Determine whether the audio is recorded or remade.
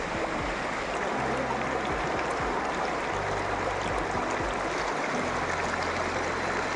recorded